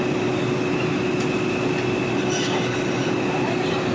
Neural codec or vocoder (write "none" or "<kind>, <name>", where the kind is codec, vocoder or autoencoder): none